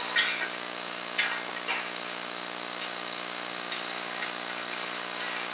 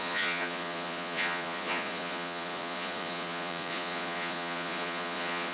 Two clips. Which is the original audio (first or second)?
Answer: first